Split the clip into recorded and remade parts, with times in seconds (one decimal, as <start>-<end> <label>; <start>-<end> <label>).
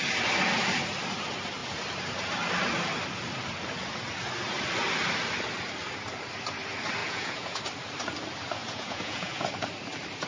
0.0-7.0 recorded; 7.0-7.6 remade; 7.6-8.6 recorded; 8.6-9.5 remade; 9.5-10.3 recorded